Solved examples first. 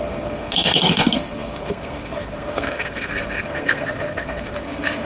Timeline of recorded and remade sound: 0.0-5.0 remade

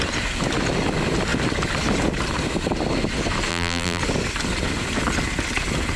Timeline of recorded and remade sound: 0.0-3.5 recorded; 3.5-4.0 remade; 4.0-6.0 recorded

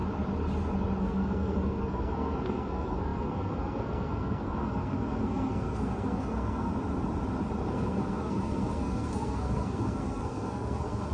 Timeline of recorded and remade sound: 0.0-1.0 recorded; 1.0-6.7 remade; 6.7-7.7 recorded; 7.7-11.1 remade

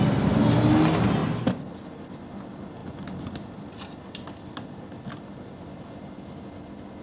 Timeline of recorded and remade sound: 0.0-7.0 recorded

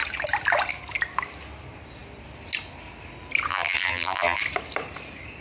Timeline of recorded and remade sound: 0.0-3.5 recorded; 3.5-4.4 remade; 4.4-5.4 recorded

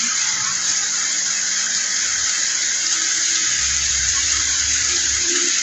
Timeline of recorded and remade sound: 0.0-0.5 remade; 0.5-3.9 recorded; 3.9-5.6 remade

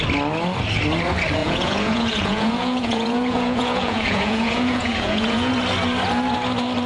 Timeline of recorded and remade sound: 0.0-1.4 recorded; 1.4-5.5 remade; 5.5-6.9 recorded

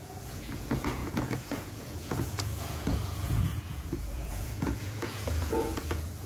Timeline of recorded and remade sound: 0.0-6.3 remade